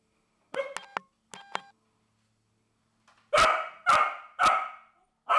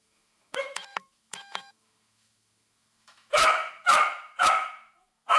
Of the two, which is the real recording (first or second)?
first